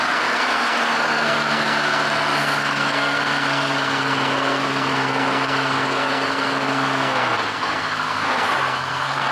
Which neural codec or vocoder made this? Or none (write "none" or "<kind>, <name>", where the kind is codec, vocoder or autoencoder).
codec, SNAC